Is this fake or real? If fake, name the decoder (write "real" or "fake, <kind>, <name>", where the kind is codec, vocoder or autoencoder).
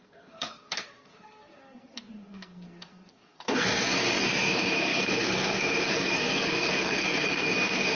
fake, codec, SNAC